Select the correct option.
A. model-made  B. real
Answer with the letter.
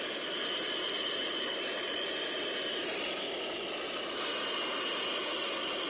B